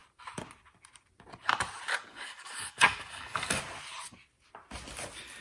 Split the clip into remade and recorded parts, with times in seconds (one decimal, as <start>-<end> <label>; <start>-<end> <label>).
0.0-1.9 recorded; 1.9-3.6 remade; 3.6-5.4 recorded